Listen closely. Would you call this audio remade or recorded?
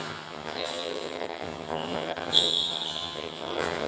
remade